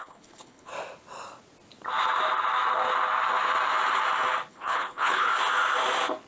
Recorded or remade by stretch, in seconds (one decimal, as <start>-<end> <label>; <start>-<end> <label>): 0.0-0.7 remade; 0.7-4.5 recorded; 4.5-5.3 remade; 5.3-6.3 recorded